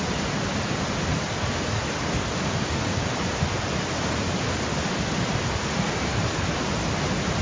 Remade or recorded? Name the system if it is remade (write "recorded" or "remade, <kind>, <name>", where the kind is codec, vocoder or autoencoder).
recorded